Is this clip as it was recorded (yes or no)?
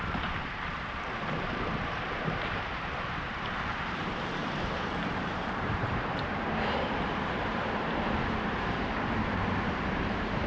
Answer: no